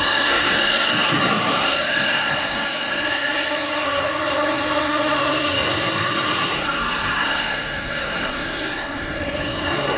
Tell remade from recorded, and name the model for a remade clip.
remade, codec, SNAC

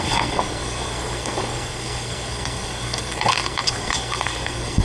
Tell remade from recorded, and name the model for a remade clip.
remade, codec, SNAC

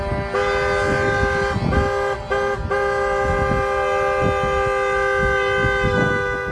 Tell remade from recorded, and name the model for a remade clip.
recorded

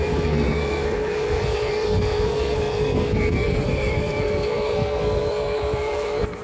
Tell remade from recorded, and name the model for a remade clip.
remade, codec, SNAC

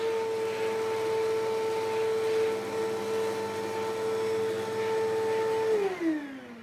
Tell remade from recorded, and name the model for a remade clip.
recorded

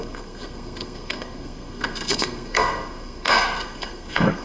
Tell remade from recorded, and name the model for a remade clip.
remade, codec, SNAC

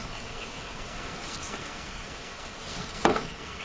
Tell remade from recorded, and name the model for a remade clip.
remade, codec, SNAC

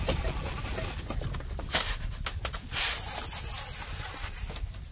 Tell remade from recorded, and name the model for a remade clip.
recorded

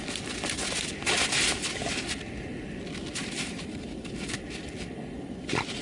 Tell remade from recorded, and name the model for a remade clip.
recorded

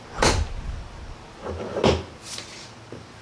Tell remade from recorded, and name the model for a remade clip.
recorded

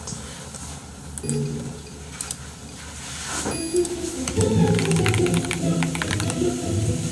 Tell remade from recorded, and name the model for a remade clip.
recorded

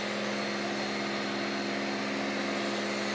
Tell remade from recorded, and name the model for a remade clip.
recorded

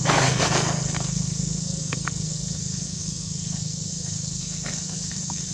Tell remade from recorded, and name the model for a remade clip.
remade, codec, SNAC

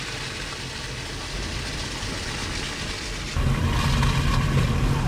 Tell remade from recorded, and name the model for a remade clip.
recorded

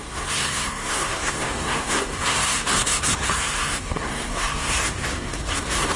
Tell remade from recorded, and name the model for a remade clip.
remade, codec, SNAC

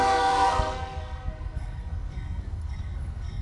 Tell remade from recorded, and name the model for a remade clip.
remade, codec, SNAC